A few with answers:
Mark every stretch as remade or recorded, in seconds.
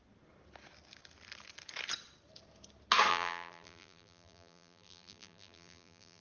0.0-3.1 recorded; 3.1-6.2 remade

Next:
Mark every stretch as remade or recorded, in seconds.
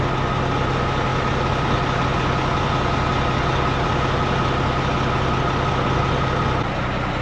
0.0-7.2 recorded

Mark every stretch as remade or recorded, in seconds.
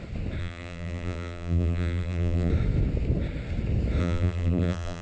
0.0-0.4 recorded; 0.4-2.5 remade; 2.5-4.0 recorded; 4.0-5.0 remade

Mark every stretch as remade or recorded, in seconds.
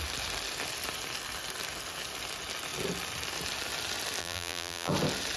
0.0-4.2 recorded; 4.2-4.9 remade; 4.9-5.4 recorded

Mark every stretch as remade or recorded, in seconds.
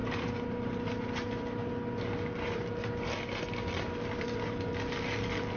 0.0-1.7 remade; 1.7-5.6 recorded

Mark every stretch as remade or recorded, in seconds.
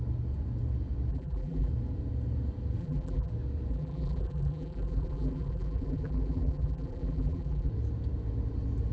0.0-1.1 recorded; 1.1-1.7 remade; 1.7-2.8 recorded; 2.8-3.3 remade; 3.3-3.7 recorded; 3.7-7.7 remade; 7.7-8.9 recorded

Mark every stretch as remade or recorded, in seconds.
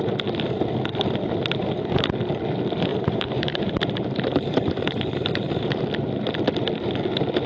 0.0-2.9 recorded; 2.9-5.8 remade; 5.8-7.5 recorded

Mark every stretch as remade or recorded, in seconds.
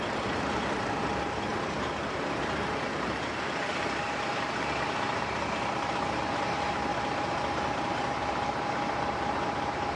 0.0-10.0 remade